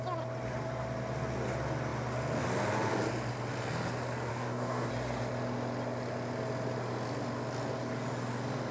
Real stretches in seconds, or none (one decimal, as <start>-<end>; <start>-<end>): 0.0-4.3; 4.9-8.7